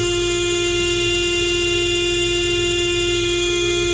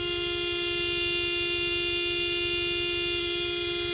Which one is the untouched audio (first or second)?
second